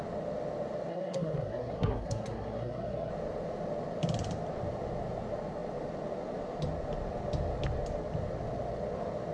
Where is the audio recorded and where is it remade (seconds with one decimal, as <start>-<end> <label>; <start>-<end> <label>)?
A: 0.0-0.9 recorded; 0.9-3.1 remade; 3.1-9.3 recorded